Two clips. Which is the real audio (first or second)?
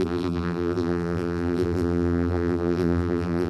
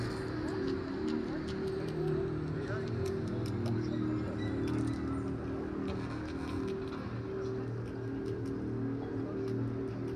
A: second